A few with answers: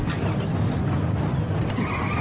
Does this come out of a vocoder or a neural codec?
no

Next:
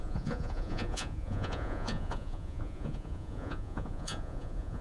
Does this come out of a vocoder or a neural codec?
yes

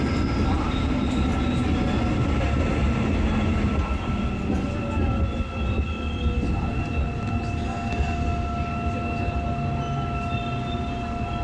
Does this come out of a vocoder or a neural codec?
no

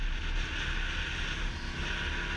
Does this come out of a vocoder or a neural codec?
no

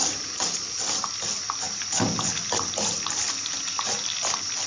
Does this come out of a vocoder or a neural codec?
no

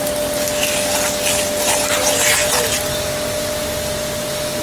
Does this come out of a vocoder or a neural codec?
no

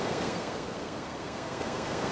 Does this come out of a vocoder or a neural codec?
yes